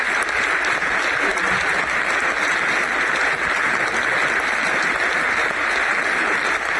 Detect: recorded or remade recorded